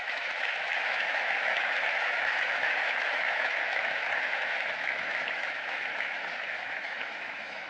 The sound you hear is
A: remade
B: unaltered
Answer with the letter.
A